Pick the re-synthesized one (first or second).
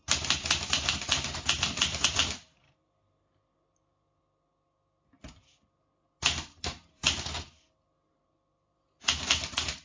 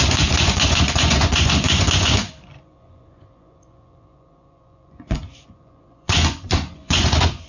second